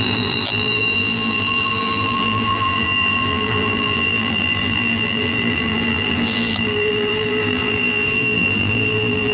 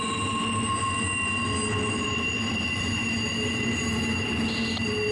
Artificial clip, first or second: first